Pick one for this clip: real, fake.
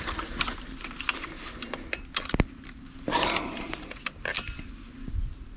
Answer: real